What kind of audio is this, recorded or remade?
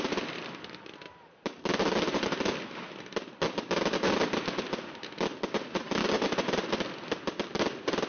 recorded